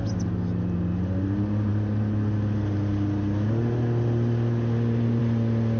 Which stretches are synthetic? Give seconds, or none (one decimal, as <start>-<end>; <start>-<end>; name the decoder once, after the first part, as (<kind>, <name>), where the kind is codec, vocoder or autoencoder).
none